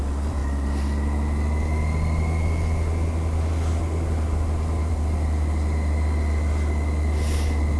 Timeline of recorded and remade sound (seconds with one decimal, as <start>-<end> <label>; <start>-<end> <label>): 0.0-7.8 recorded